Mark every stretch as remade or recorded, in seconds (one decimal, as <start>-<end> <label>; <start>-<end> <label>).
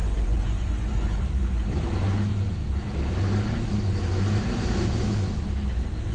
0.0-1.2 remade; 1.2-6.1 recorded